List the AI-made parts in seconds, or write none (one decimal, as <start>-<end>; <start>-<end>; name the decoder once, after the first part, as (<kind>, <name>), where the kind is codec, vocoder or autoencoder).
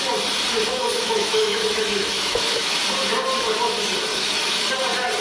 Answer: 0.7-2.8 (autoencoder, DAC-VAE); 4.1-4.7